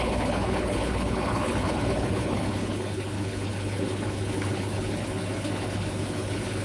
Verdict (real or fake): fake